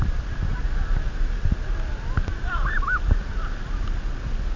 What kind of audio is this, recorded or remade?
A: recorded